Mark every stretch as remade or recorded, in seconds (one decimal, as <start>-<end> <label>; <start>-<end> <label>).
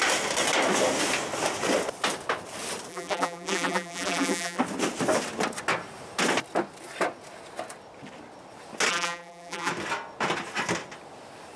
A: 0.0-2.9 recorded; 2.9-4.6 remade; 4.6-8.9 recorded; 8.9-9.7 remade; 9.7-11.6 recorded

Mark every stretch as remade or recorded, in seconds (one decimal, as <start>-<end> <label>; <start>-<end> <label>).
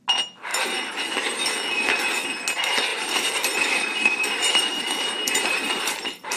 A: 0.0-0.5 recorded; 0.5-1.4 remade; 1.4-2.9 recorded; 2.9-6.4 remade